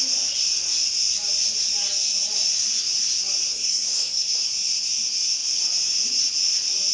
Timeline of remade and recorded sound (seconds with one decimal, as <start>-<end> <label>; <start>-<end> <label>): 0.0-3.5 recorded; 3.5-4.5 remade; 4.5-6.9 recorded